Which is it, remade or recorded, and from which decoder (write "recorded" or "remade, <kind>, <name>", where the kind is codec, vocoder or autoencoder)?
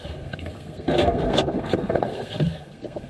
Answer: remade, codec, SNAC